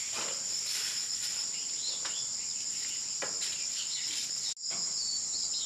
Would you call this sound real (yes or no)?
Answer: yes